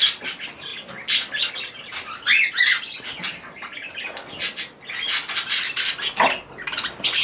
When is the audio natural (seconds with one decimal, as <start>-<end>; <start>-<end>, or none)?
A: 0.0-7.2

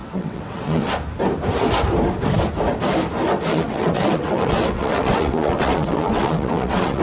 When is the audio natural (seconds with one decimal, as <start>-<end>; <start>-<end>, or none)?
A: 0.9-3.5